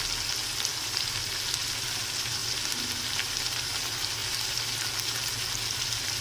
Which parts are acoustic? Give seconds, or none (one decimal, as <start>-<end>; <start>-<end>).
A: 0.0-0.7; 1.4-2.4; 3.4-6.2